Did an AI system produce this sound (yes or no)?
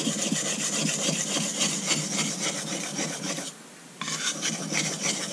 no